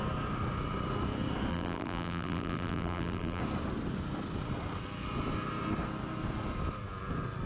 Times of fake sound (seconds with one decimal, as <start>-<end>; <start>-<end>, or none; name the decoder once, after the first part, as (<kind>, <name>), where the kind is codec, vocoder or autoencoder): 1.5-3.4 (vocoder, BigVGAN v2)